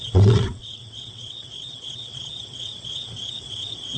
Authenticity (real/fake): fake